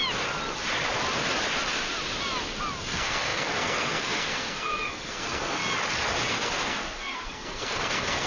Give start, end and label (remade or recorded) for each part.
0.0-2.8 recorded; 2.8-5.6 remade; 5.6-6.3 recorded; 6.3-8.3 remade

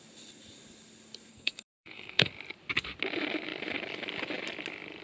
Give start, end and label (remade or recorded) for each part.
0.0-1.3 recorded; 1.3-2.3 remade; 2.3-5.0 recorded